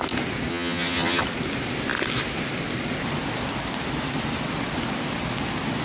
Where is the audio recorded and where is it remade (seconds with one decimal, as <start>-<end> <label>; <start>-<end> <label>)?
0.0-0.5 recorded; 0.5-1.2 remade; 1.2-5.8 recorded